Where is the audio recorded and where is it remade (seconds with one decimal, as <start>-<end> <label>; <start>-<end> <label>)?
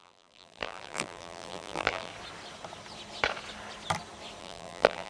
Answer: 0.0-2.1 remade; 2.1-4.4 recorded; 4.4-5.1 remade